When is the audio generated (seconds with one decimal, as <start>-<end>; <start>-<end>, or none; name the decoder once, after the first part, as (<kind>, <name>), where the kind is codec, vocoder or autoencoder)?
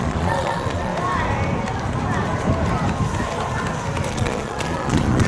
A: 0.0-0.9 (vocoder, Vocos); 4.1-5.3